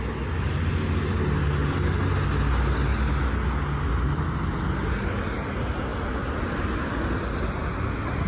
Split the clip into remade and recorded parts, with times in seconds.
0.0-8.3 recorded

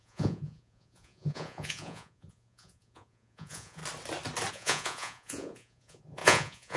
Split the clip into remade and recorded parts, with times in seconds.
0.0-3.8 remade; 3.8-4.5 recorded; 4.5-6.8 remade

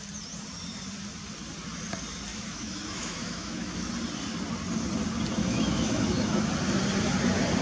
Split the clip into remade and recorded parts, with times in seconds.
0.0-2.3 recorded; 2.3-3.9 remade; 3.9-5.4 recorded; 5.4-6.5 remade; 6.5-7.6 recorded

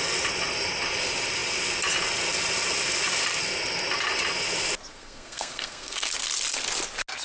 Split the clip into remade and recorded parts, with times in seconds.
0.0-4.9 recorded; 4.9-6.1 remade; 6.1-7.2 recorded